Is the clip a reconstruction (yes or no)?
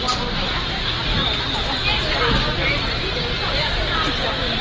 no